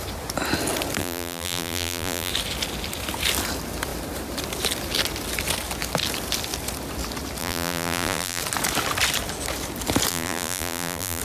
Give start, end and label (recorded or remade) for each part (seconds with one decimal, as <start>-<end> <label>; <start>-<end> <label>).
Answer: 0.0-1.0 recorded; 1.0-2.3 remade; 2.3-7.4 recorded; 7.4-8.4 remade; 8.4-10.1 recorded; 10.1-11.2 remade